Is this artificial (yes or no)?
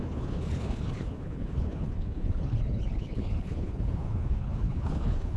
yes